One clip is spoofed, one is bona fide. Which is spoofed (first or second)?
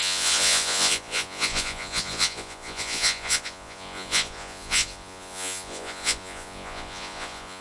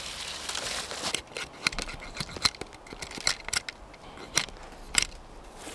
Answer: first